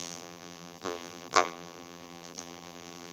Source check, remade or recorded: remade